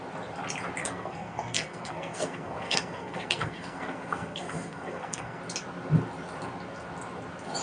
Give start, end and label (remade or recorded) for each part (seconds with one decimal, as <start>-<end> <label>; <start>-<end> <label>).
0.0-0.8 recorded; 0.8-5.4 remade; 5.4-7.6 recorded